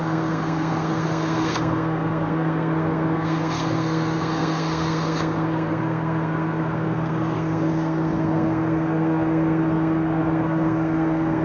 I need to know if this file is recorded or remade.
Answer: remade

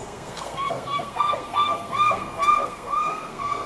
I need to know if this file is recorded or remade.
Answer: remade